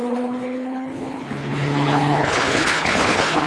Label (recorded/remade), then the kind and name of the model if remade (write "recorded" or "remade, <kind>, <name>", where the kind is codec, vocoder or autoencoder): remade, codec, HILCodec